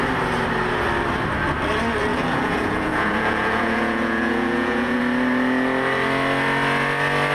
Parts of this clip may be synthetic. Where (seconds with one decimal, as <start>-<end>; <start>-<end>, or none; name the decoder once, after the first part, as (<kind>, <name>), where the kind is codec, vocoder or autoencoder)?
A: 2.1-5.0 (vocoder, Vocos)